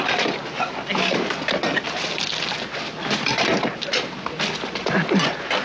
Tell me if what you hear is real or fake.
real